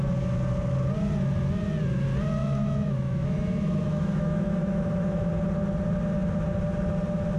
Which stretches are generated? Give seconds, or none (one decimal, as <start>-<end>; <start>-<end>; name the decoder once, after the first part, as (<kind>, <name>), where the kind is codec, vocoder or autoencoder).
2.4-5.3 (autoencoder, DAC-VAE)